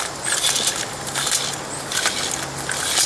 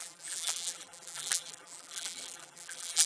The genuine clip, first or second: first